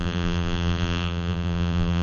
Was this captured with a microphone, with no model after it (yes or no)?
no